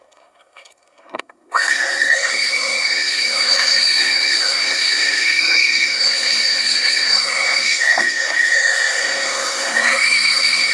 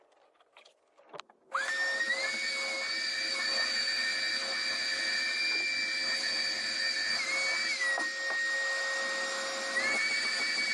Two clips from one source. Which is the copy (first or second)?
first